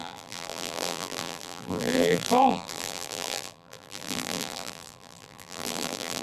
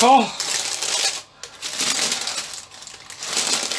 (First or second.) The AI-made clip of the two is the first